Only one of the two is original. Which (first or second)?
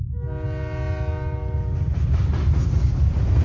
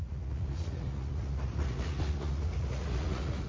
first